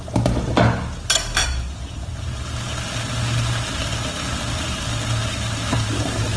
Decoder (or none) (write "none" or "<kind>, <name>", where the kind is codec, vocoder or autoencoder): none